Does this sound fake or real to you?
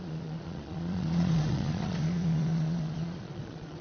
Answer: fake